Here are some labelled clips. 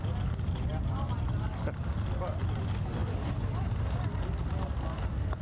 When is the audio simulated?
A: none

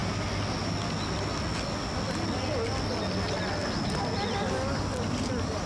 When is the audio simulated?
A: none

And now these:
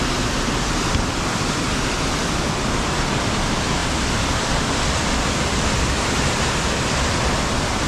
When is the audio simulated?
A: none

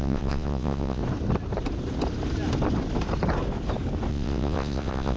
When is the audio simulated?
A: 0.0-1.0 (vocoder, WaveNeXt); 4.1-5.2

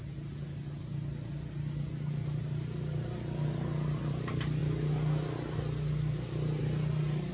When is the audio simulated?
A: none